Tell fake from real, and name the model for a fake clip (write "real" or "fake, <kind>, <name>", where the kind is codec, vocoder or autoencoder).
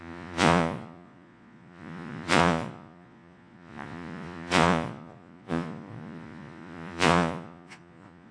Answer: fake, vocoder, Vocos